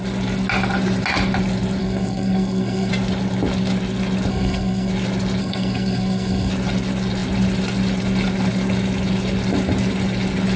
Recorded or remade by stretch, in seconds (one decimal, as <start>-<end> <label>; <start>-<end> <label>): 0.0-1.8 recorded; 1.8-2.9 remade; 2.9-4.3 recorded; 4.3-4.9 remade; 4.9-5.4 recorded; 5.4-6.5 remade; 6.5-10.6 recorded